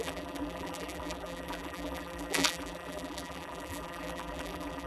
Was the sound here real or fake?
fake